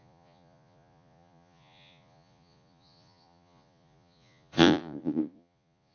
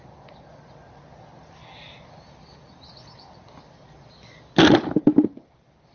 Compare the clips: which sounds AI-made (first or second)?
first